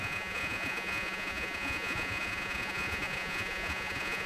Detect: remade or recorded remade